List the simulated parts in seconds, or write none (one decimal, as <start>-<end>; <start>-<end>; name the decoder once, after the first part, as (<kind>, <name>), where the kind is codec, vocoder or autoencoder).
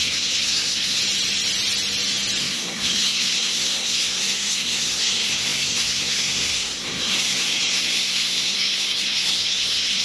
0.0-1.0 (codec, SNAC); 2.4-10.0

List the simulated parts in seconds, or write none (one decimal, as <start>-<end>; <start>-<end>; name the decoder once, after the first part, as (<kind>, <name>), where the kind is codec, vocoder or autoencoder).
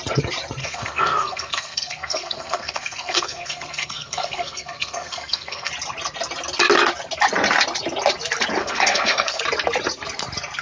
0.6-5.7 (codec, SNAC); 8.6-9.4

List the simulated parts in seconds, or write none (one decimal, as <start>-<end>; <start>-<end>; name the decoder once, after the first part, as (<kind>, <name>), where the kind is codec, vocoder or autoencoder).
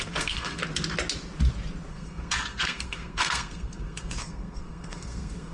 0.0-0.6 (codec, SNAC); 1.9-5.5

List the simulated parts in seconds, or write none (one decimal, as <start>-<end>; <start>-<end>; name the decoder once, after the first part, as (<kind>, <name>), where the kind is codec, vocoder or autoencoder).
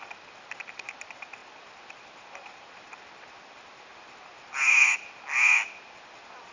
none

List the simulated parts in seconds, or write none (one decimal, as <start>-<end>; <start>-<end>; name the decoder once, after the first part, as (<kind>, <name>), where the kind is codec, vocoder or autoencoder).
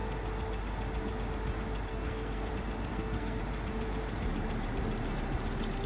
1.9-2.5 (codec, SNAC); 2.9-3.4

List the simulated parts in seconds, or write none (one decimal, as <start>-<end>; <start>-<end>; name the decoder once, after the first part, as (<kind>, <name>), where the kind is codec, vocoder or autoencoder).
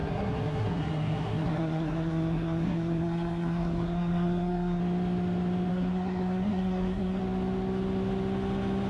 0.0-4.8 (codec, SNAC); 5.7-7.2